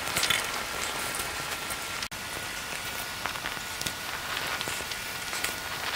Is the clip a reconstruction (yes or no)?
no